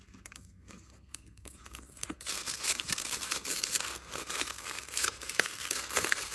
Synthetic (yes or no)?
yes